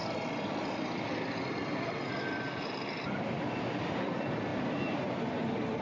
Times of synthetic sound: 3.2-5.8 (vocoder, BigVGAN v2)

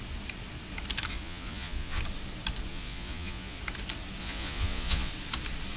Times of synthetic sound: 1.1-2.0 (vocoder, Vocos); 2.7-3.6; 4.2-5.1

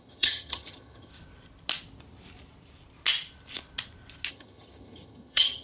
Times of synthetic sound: 0.0-1.1 (vocoder, HiFi-GAN); 4.3-5.6

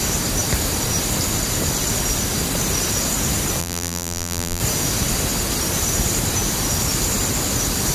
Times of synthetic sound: 3.6-4.6 (vocoder, BigVGAN v2)

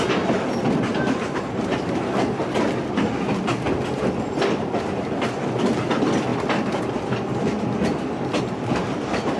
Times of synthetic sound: 0.9-2.4 (vocoder, BigVGAN v2)

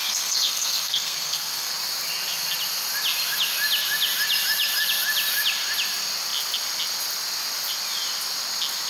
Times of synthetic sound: 0.0-1.7 (codec, SNAC)

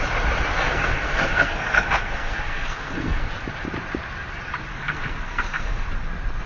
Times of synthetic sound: 0.5-3.3 (codec, SNAC); 4.7-5.9